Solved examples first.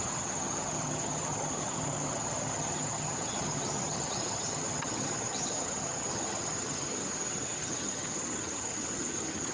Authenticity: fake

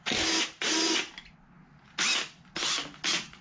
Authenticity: real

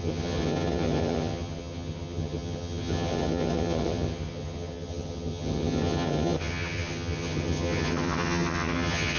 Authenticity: fake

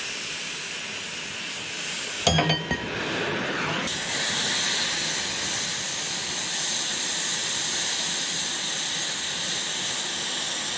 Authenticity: real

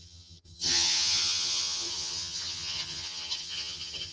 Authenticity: fake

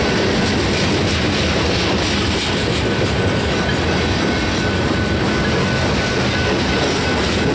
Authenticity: real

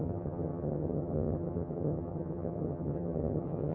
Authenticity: fake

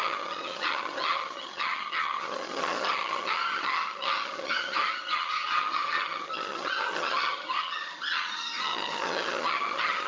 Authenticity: fake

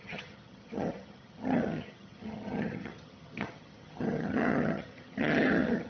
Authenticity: fake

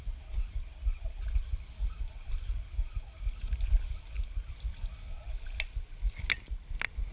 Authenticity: real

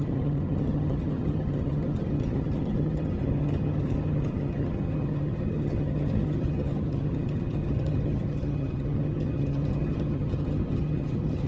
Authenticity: fake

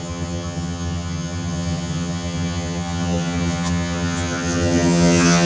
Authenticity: fake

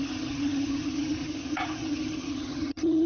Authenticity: fake